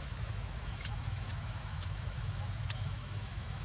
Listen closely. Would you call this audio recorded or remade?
remade